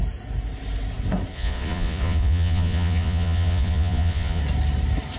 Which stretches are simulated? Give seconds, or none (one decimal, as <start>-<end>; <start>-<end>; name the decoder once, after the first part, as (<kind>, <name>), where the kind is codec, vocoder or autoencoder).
1.3-4.4 (vocoder, Vocos)

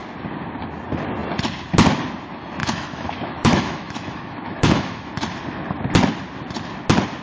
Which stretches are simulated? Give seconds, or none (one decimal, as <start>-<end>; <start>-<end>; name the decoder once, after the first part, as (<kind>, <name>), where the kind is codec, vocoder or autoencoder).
2.6-5.1 (autoencoder, DAC-VAE)

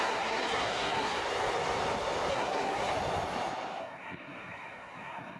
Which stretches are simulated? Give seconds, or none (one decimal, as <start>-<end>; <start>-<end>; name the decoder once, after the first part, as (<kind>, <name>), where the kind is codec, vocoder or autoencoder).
0.0-1.2 (codec, SNAC); 2.3-2.9; 3.8-5.4

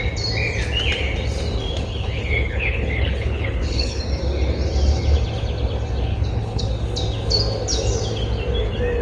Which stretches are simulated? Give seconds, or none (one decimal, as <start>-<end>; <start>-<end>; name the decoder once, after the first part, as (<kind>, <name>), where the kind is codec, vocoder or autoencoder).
1.9-4.0 (codec, HILCodec); 6.1-6.7

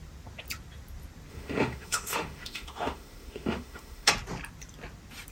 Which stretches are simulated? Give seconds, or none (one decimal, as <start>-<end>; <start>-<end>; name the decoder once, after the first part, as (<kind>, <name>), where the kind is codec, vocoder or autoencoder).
1.3-4.1 (autoencoder, DAC-VAE)

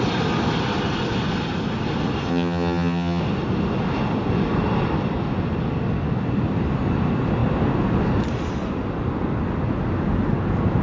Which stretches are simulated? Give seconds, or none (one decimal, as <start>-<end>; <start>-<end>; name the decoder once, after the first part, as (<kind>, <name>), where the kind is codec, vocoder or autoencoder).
2.3-3.2 (vocoder, HiFi-GAN)